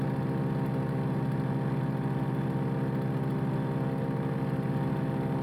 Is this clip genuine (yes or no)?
yes